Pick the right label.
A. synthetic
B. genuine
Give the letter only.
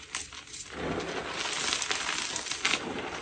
B